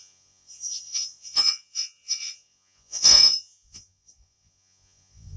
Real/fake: fake